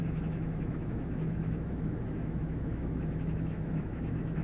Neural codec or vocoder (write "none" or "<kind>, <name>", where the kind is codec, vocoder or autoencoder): autoencoder, DAC-VAE